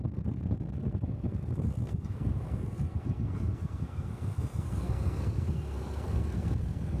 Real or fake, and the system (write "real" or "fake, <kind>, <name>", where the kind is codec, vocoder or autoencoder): fake, codec, SNAC